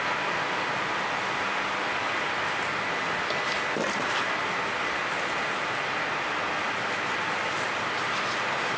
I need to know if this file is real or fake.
real